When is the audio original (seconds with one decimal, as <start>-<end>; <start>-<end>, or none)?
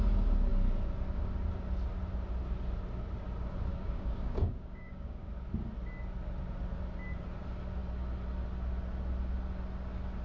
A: 0.0-3.7; 5.3-10.2